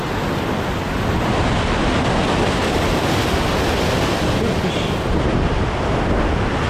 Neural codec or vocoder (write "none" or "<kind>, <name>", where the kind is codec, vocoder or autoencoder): none